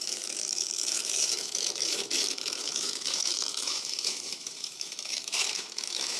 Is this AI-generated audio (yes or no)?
yes